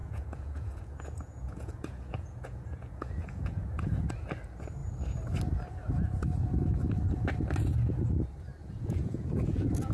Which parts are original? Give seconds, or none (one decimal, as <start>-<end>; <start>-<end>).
4.1-8.6